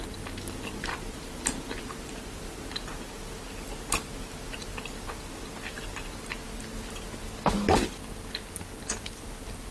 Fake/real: real